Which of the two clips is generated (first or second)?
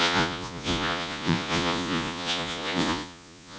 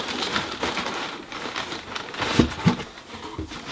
first